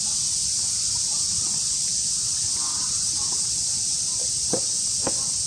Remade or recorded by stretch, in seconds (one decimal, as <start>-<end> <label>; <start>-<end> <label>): 0.0-2.7 recorded; 2.7-3.5 remade; 3.5-5.5 recorded